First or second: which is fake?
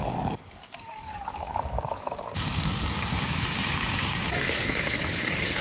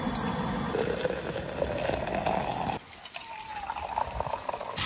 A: first